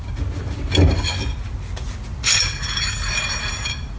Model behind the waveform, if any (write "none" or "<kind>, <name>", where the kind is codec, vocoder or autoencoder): none